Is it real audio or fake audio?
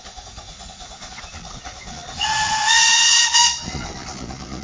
fake